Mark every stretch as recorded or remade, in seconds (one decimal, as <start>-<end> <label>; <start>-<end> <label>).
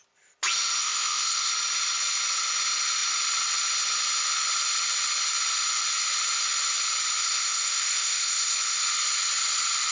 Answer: 0.0-0.8 recorded; 0.8-1.5 remade; 1.5-7.2 recorded; 7.2-8.8 remade; 8.8-9.9 recorded